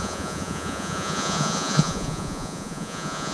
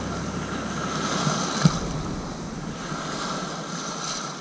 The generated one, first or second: first